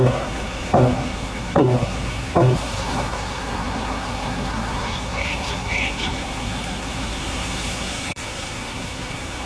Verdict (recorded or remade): remade